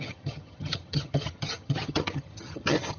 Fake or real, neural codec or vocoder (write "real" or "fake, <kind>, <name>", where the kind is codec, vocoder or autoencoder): fake, vocoder, HiFi-GAN